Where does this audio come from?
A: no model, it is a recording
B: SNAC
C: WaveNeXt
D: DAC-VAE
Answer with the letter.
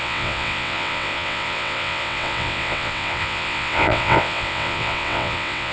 C